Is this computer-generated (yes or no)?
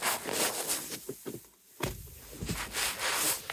no